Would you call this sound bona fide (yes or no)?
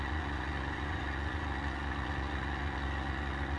no